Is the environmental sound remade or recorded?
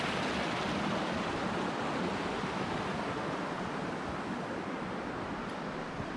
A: recorded